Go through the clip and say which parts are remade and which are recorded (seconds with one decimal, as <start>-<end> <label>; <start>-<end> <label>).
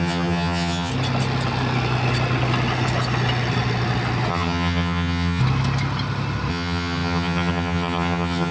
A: 0.0-0.9 remade; 0.9-4.3 recorded; 4.3-5.4 remade; 5.4-6.5 recorded; 6.5-8.5 remade